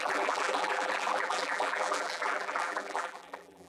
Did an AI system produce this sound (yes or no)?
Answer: yes